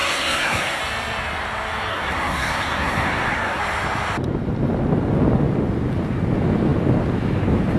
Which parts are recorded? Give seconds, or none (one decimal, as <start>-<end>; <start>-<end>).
0.8-1.9; 3.6-7.8